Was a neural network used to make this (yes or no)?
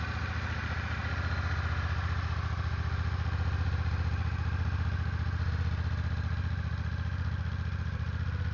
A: no